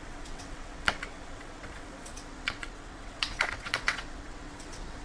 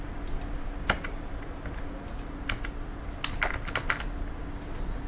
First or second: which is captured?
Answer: second